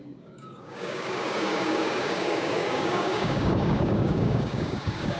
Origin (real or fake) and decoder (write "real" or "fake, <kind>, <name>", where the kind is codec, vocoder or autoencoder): fake, codec, DAC